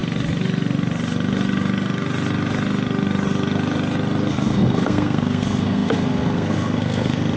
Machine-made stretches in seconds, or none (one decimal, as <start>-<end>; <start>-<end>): 4.3-7.4